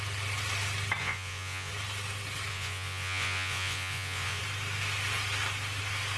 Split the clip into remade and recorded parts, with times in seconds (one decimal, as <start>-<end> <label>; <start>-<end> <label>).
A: 0.0-1.0 recorded; 1.0-1.7 remade; 1.7-2.5 recorded; 2.5-4.4 remade; 4.4-6.2 recorded